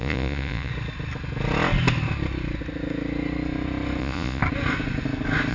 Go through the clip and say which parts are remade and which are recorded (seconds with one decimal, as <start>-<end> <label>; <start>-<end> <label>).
0.0-0.7 remade; 0.7-4.0 recorded; 4.0-4.4 remade; 4.4-5.5 recorded